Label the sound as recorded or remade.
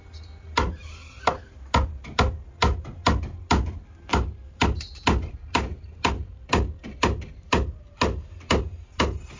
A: recorded